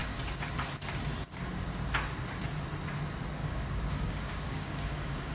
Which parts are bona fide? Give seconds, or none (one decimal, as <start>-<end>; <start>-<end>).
0.0-3.4